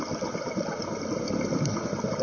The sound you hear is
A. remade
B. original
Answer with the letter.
B